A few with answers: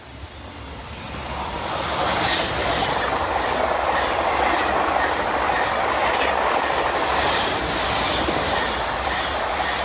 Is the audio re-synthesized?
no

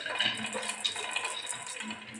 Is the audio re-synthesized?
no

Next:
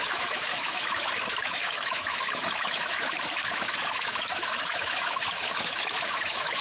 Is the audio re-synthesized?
yes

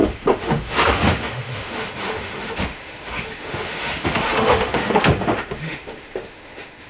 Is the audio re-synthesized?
yes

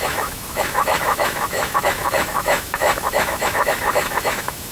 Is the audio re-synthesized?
yes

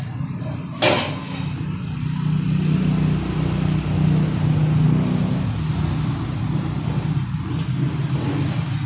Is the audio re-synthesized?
no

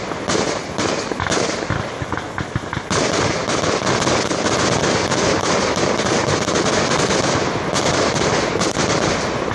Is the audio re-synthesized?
no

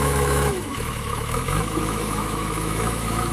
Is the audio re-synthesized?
yes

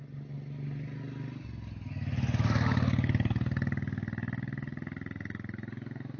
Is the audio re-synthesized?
no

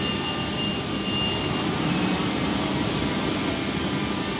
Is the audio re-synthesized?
no